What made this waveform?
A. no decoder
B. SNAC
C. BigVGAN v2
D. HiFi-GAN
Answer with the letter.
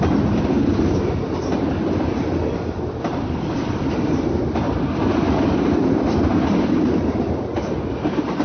A